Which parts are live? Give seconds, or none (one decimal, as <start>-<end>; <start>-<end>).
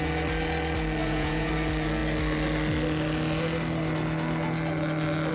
0.0-1.0; 1.5-5.3